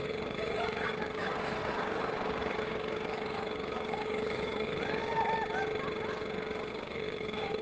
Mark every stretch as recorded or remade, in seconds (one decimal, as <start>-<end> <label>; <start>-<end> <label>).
0.0-5.0 remade; 5.0-6.7 recorded; 6.7-7.6 remade